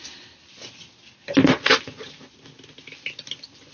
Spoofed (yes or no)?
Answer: no